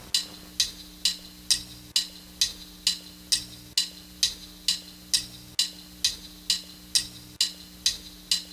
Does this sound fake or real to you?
real